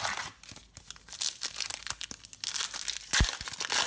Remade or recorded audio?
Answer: recorded